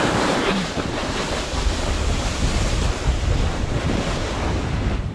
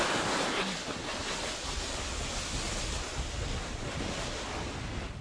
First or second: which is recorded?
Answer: second